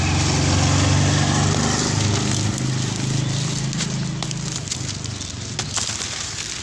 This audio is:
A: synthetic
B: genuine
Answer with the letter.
B